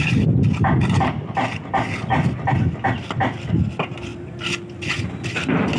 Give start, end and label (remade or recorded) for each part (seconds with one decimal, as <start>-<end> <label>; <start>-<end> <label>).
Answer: 0.0-5.8 recorded